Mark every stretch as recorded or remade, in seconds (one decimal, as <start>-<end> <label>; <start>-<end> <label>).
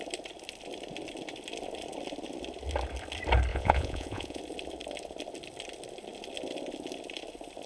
0.0-3.5 recorded; 3.5-4.4 remade; 4.4-7.7 recorded